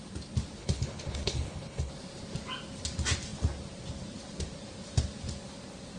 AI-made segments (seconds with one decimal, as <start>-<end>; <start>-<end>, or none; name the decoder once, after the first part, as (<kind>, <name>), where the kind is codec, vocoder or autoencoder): 0.6-1.9 (codec, HILCodec)

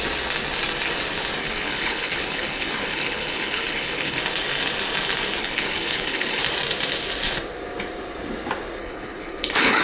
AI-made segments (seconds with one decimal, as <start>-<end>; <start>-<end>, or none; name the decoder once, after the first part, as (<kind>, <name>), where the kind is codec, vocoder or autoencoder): 1.4-4.2 (codec, HILCodec); 5.4-6.4; 8.8-9.8

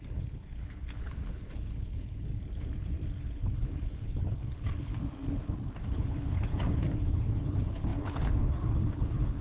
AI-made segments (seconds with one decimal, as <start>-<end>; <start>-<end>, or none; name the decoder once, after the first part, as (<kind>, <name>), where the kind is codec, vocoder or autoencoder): 0.0-2.3 (codec, HILCodec); 3.2-4.9; 5.9-9.4